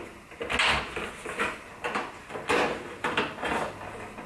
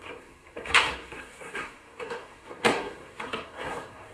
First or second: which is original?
first